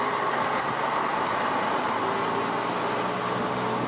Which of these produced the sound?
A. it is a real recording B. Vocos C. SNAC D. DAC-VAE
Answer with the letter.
A